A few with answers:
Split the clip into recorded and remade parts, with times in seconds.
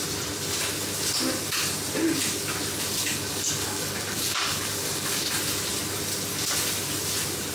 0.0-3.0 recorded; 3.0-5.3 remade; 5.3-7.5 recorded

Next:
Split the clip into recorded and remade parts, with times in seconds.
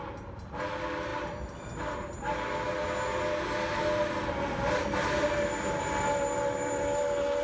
0.0-7.4 recorded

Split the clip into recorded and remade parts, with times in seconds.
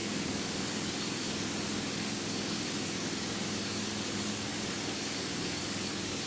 0.0-6.3 remade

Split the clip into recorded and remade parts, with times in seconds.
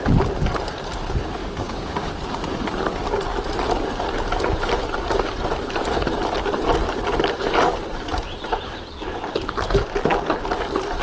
0.0-1.4 recorded; 1.4-2.1 remade; 2.1-11.0 recorded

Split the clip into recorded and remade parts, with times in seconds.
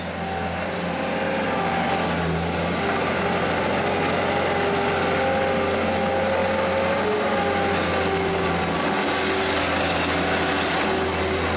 0.0-11.6 recorded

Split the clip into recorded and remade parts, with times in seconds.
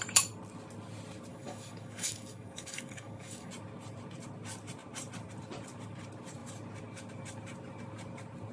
0.0-1.3 recorded; 1.3-3.5 remade; 3.5-8.5 recorded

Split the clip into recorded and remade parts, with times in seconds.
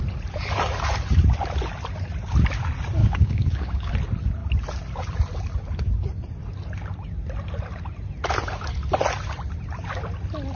0.0-3.0 recorded; 3.0-3.9 remade; 3.9-10.6 recorded